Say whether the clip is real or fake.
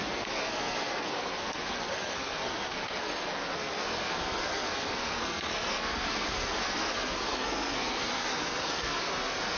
fake